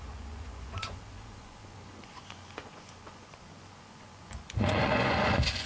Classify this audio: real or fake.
fake